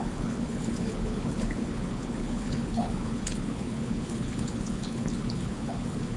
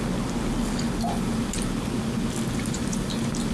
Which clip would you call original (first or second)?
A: second